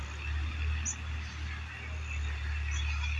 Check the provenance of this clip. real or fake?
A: real